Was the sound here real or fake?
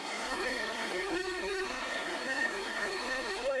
fake